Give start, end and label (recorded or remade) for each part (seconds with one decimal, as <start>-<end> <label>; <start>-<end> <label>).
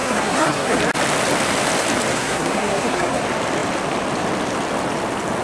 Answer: 0.0-0.8 remade; 0.8-2.1 recorded; 2.1-3.2 remade; 3.2-5.4 recorded